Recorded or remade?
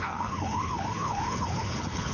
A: remade